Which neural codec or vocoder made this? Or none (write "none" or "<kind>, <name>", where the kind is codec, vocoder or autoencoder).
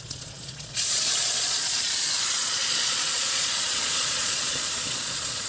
vocoder, Vocos